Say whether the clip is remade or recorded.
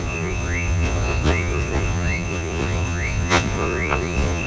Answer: remade